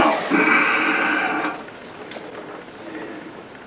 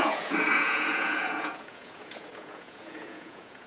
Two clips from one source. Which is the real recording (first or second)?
first